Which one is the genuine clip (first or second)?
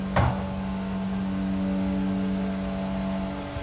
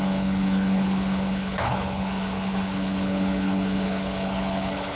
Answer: first